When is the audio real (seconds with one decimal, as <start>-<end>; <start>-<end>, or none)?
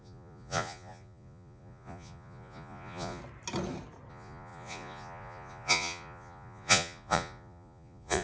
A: 3.2-4.1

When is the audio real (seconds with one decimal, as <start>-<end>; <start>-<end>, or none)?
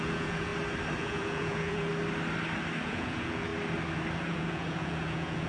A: 0.5-1.0; 1.9-2.8; 3.5-4.2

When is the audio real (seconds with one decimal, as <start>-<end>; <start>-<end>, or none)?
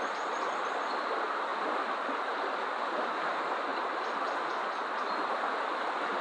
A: 0.0-6.2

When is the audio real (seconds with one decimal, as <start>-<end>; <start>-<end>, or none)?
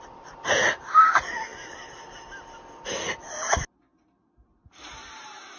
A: 0.0-5.6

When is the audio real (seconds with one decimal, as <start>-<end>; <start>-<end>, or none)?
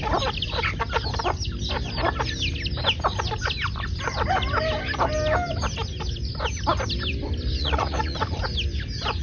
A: 0.0-7.6; 8.4-9.2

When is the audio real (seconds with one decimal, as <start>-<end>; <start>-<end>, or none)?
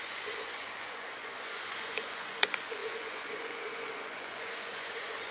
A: none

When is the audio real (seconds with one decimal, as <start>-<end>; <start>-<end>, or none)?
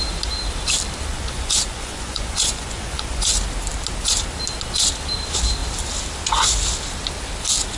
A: 0.0-1.1; 3.2-7.8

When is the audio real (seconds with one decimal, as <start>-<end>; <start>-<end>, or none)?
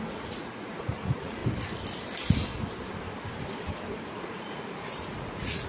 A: 1.4-4.1